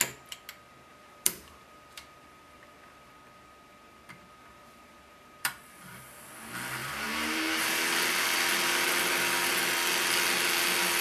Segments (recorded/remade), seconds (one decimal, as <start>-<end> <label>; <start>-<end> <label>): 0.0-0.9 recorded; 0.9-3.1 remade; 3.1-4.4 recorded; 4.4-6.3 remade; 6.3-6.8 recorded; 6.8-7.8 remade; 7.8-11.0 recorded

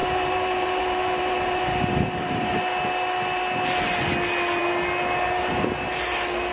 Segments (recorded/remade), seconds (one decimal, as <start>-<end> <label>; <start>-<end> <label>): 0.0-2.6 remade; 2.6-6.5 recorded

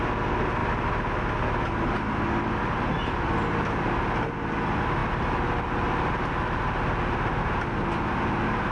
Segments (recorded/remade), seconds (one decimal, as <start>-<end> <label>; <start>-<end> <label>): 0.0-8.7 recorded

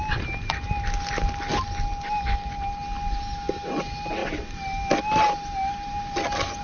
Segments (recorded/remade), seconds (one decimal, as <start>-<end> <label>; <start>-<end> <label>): 0.0-6.6 recorded

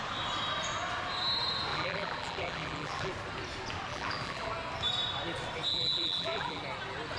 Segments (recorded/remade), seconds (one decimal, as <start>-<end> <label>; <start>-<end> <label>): 0.0-1.7 recorded; 1.7-3.1 remade; 3.1-3.9 recorded; 3.9-4.5 remade; 4.5-5.7 recorded; 5.7-6.6 remade; 6.6-7.2 recorded

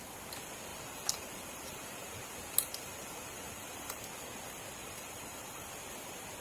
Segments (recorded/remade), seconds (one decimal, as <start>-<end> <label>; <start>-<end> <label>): 0.0-0.7 recorded; 0.7-4.0 remade; 4.0-4.8 recorded; 4.8-5.7 remade; 5.7-6.4 recorded